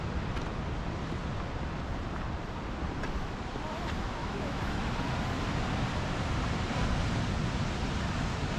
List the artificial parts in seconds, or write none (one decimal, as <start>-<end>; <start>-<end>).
4.2-4.9